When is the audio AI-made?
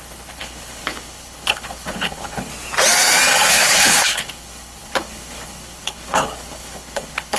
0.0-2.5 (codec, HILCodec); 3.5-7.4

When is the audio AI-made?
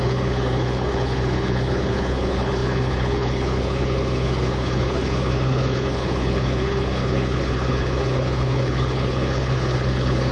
0.0-10.3 (codec, HILCodec)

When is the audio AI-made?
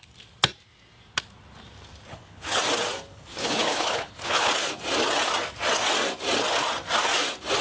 2.1-2.6 (codec, HILCodec); 3.1-4.5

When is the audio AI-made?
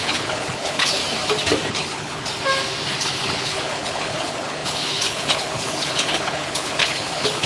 0.0-1.0 (codec, HILCodec); 1.7-2.3; 3.0-7.5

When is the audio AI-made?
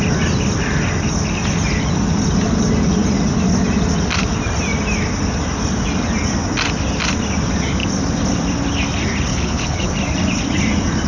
9.3-9.9 (codec, HILCodec)